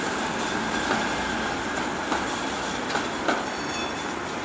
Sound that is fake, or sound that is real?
real